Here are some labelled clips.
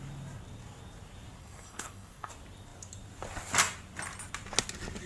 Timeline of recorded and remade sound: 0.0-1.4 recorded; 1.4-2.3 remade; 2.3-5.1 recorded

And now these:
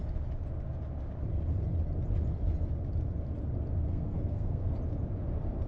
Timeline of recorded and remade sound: 0.0-3.9 recorded; 3.9-4.7 remade; 4.7-5.7 recorded